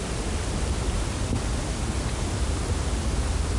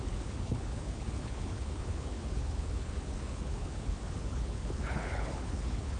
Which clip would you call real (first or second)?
first